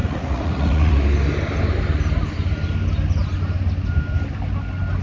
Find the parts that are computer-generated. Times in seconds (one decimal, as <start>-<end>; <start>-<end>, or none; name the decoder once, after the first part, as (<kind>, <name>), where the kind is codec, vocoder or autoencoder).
0.0-0.9 (vocoder, Vocos)